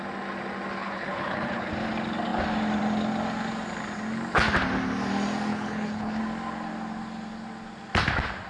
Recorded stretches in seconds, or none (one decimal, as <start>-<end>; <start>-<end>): 0.0-0.8; 1.7-5.5; 6.2-8.5